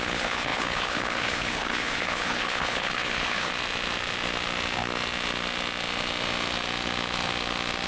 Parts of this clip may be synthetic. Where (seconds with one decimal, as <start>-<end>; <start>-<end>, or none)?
0.0-3.5